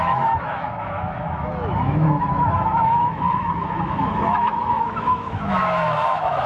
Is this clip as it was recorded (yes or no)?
no